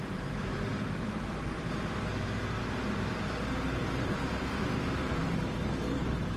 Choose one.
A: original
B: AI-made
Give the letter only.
B